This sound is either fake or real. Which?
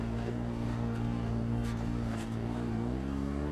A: fake